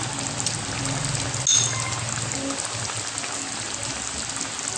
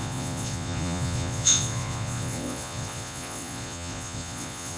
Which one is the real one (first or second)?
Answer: first